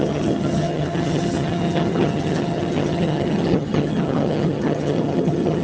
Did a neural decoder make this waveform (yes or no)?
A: yes